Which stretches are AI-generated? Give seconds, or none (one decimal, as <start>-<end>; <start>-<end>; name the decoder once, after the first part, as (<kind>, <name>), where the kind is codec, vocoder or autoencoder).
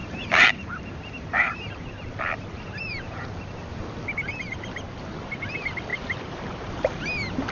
0.0-3.3 (vocoder, BigVGAN v2); 5.9-7.0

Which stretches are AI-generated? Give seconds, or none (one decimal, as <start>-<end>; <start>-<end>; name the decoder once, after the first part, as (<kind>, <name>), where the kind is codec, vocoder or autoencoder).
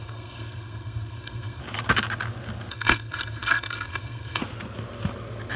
0.0-1.6 (codec, SNAC); 2.7-4.4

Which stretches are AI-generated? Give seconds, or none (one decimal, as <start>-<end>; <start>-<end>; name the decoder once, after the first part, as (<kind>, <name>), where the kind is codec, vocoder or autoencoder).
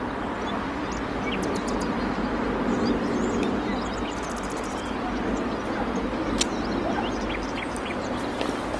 none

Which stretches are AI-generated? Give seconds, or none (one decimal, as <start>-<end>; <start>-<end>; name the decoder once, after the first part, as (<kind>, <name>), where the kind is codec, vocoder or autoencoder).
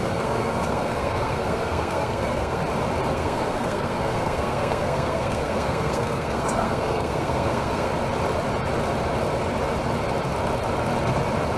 0.0-2.6 (codec, SNAC); 3.1-7.9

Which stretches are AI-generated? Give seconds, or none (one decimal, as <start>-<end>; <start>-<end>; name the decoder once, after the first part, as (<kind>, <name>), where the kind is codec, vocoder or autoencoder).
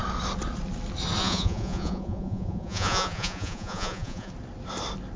1.2-4.3 (vocoder, Vocos)